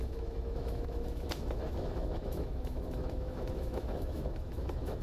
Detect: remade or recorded remade